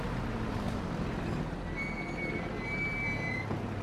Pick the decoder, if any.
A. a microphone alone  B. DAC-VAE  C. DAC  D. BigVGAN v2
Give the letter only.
A